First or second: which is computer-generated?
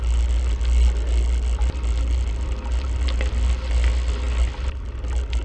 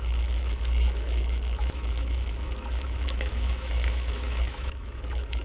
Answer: second